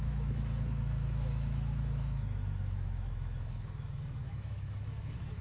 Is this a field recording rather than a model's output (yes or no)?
no